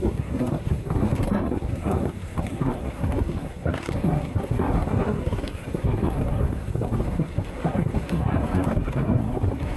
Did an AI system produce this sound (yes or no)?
yes